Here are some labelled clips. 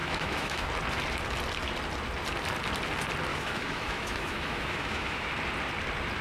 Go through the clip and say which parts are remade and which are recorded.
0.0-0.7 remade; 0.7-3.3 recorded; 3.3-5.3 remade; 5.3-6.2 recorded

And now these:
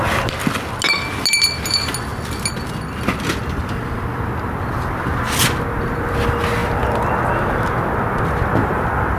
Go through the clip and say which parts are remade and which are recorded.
0.0-9.2 recorded

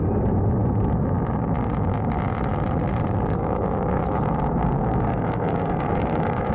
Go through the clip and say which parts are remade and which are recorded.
0.0-3.4 recorded; 3.4-4.0 remade; 4.0-4.6 recorded; 4.6-6.5 remade

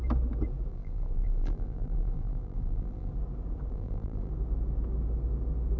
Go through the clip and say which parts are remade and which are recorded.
0.0-0.7 recorded; 0.7-3.1 remade; 3.1-3.7 recorded; 3.7-4.3 remade; 4.3-5.8 recorded

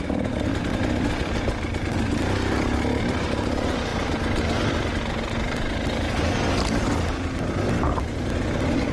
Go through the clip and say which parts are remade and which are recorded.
0.0-8.9 recorded

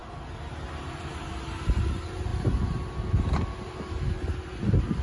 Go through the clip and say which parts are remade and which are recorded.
0.0-5.0 recorded